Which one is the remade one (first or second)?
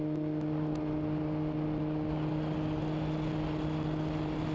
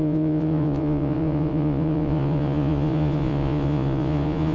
second